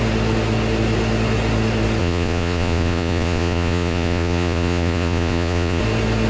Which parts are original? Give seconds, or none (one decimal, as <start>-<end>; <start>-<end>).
0.0-2.0; 5.8-6.3